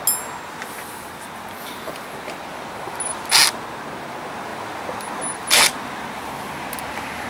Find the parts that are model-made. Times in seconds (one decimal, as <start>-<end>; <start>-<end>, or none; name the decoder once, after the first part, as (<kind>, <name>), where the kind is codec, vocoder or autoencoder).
none